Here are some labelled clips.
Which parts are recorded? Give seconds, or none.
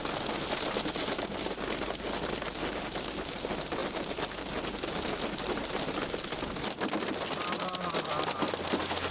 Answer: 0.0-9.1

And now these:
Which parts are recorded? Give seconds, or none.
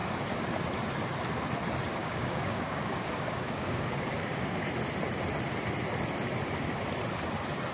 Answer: 0.0-2.0; 4.7-7.7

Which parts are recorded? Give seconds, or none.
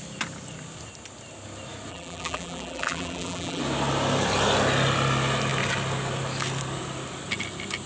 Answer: 0.0-1.9; 3.6-7.9